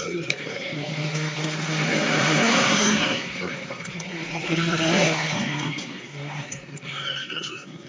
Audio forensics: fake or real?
fake